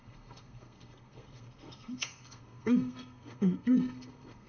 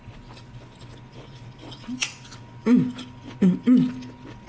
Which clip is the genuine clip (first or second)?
second